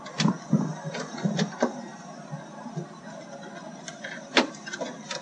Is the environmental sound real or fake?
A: real